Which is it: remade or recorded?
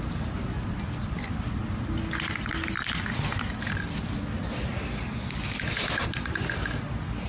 recorded